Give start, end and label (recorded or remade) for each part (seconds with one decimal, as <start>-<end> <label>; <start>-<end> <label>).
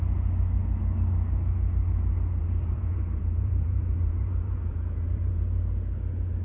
0.0-2.4 recorded; 2.4-5.7 remade; 5.7-6.4 recorded